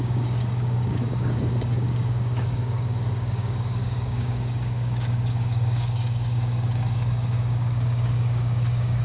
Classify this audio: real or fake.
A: fake